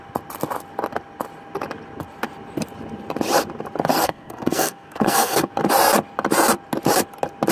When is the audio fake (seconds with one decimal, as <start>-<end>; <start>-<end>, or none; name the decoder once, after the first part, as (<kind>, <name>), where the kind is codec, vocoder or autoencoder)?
3.9-5.5 (codec, SNAC)